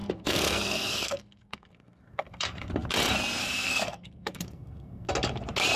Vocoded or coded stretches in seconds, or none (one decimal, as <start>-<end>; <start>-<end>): 0.0-2.7; 3.4-5.1

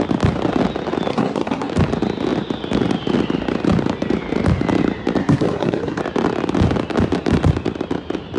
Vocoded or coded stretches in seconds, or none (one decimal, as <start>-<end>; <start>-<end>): 1.1-1.7; 5.2-6.0

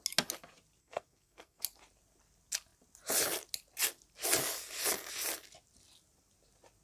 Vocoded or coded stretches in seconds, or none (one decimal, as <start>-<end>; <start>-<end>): 0.8-1.6

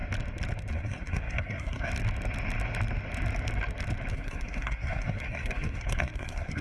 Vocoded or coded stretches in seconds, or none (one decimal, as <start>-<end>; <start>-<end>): 0.7-1.9; 4.1-6.6

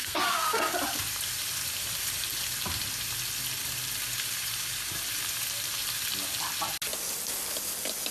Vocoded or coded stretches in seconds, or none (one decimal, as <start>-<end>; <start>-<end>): 0.0-0.6

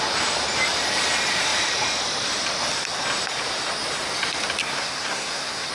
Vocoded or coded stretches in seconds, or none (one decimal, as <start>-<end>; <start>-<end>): 4.6-5.7

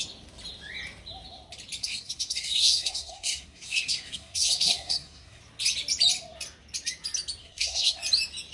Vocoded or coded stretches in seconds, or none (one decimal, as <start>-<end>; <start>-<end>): 1.8-5.4; 7.4-8.0